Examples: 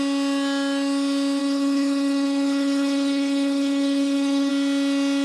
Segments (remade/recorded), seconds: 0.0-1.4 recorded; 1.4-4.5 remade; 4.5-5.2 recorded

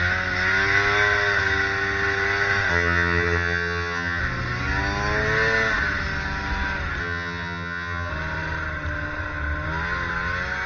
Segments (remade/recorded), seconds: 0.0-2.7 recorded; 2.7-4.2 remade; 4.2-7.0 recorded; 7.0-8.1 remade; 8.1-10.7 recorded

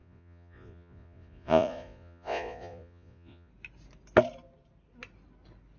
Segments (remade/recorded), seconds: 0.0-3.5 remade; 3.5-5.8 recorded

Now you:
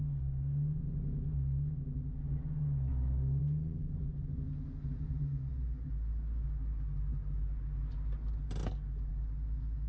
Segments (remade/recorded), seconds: 0.0-0.8 remade; 0.8-2.9 recorded; 2.9-3.4 remade; 3.4-9.9 recorded

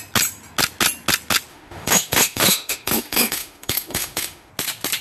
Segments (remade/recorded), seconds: 0.0-1.5 recorded; 1.5-4.5 remade; 4.5-5.0 recorded